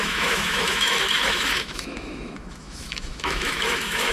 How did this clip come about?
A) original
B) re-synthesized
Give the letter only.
B